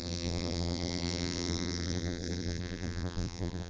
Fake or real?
fake